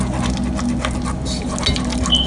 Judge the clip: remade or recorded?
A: recorded